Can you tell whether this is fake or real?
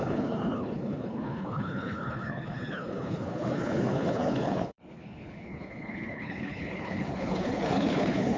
fake